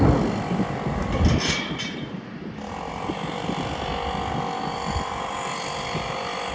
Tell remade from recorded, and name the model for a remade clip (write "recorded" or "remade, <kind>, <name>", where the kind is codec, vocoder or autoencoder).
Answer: recorded